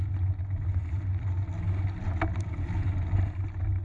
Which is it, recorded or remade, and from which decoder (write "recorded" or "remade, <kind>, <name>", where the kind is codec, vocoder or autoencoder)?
recorded